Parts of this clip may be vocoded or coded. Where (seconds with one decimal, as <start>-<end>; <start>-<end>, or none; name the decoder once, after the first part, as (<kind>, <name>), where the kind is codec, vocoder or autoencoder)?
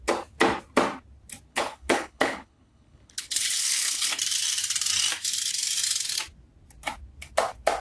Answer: 1.5-4.2 (codec, HILCodec)